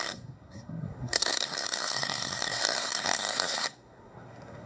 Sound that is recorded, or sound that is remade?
remade